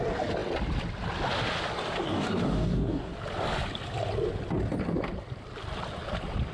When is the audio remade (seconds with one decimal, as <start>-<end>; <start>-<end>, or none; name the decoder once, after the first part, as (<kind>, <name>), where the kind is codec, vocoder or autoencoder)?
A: 2.0-3.1 (codec, DAC)